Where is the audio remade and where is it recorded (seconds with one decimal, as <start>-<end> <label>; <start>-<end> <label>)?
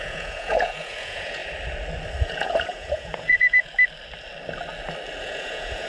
0.0-1.4 remade; 1.4-2.2 recorded; 2.2-3.7 remade; 3.7-5.2 recorded; 5.2-5.9 remade